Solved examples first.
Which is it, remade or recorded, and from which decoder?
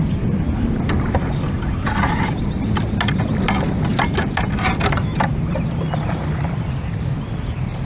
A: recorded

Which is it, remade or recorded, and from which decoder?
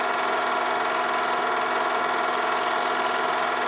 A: recorded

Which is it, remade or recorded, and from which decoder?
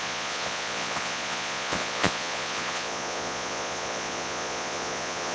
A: remade, vocoder, Vocos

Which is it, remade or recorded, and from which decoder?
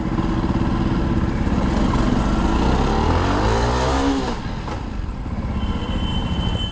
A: recorded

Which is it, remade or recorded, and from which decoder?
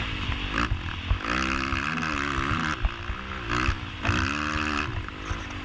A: recorded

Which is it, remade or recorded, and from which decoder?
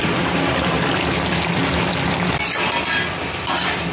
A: recorded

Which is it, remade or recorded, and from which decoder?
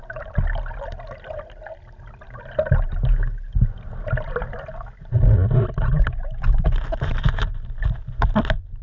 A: recorded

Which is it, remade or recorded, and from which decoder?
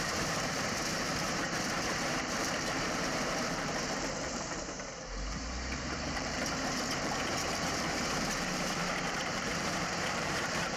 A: remade, vocoder, BigVGAN v2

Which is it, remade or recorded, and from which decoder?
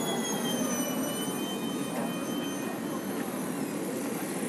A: recorded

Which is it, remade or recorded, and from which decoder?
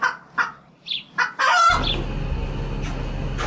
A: recorded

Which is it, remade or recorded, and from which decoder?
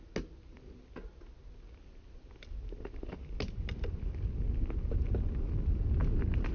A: recorded